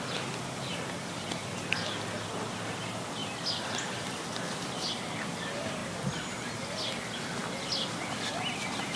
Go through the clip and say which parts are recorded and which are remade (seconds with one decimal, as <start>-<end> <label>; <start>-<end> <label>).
0.0-9.0 recorded